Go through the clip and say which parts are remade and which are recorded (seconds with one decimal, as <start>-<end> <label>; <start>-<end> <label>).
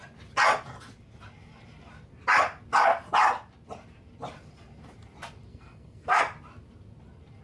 0.0-5.5 recorded; 5.5-6.2 remade; 6.2-7.4 recorded